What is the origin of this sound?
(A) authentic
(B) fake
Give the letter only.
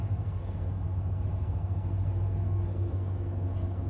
B